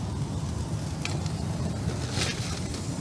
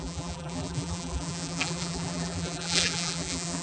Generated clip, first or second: second